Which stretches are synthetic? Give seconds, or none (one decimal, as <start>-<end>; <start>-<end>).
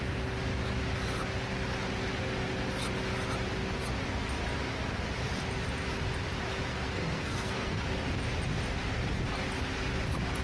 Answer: 6.7-7.8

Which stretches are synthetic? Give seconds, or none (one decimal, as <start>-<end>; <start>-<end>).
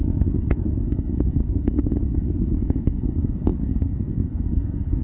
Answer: 0.0-5.0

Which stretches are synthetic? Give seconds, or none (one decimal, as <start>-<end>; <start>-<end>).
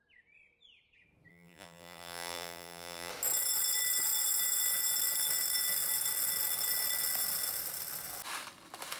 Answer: 1.3-3.1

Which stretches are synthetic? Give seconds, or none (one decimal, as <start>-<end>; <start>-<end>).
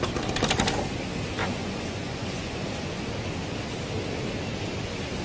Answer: 1.4-3.0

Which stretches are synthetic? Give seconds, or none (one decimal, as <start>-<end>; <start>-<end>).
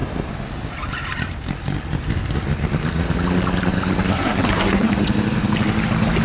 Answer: 4.1-4.9